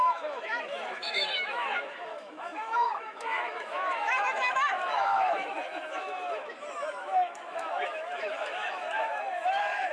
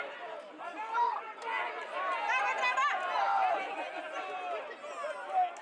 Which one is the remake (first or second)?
first